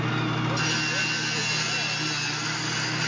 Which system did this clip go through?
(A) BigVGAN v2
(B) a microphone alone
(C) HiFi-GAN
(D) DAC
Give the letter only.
B